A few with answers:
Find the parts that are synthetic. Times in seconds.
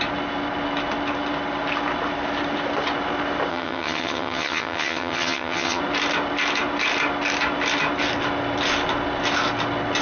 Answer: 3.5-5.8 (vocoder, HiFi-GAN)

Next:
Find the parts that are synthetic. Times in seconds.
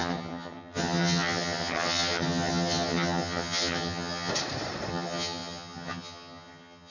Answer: 0.0-4.3 (vocoder, HiFi-GAN); 4.9-6.9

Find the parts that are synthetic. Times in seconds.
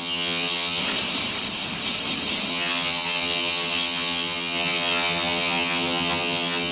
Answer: 0.0-0.8 (vocoder, HiFi-GAN); 2.5-6.7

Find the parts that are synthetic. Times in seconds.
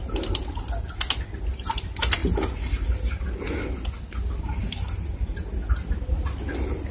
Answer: none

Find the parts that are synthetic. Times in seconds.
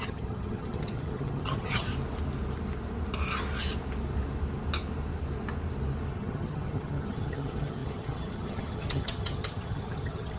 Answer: 0.0-1.9 (vocoder, HiFi-GAN); 6.1-10.4